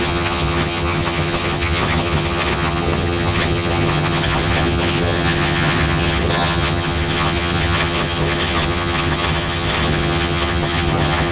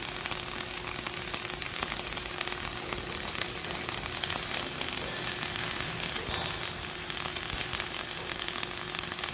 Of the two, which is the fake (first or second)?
first